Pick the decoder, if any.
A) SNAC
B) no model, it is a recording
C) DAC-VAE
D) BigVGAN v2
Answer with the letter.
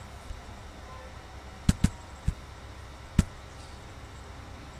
B